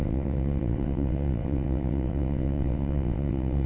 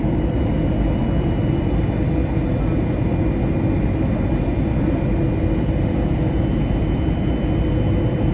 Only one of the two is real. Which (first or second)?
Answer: second